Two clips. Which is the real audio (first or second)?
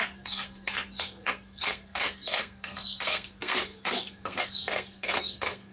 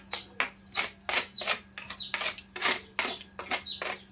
second